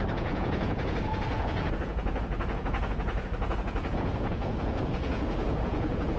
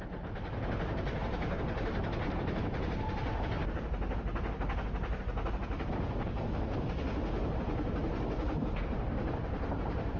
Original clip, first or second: second